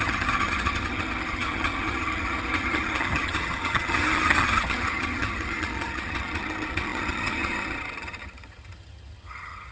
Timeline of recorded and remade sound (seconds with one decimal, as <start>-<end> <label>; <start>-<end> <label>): 0.0-9.7 remade